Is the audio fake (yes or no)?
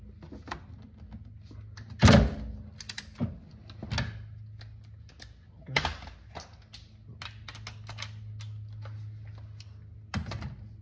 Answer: no